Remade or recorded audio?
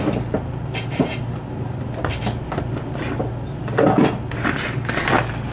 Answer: recorded